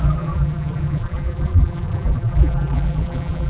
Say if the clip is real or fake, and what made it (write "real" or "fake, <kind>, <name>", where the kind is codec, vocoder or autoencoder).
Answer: fake, vocoder, BigVGAN v2